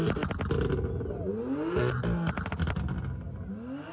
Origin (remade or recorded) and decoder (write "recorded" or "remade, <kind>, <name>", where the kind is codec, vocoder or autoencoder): recorded